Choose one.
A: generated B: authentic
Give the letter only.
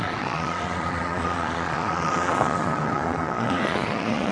A